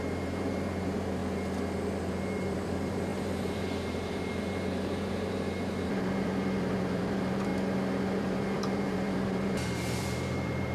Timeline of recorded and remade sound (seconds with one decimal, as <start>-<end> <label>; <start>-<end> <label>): 0.0-1.2 remade; 1.2-2.0 recorded; 2.0-7.5 remade; 7.5-8.2 recorded; 8.2-10.7 remade